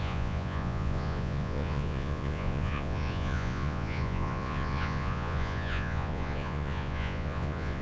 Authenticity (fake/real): fake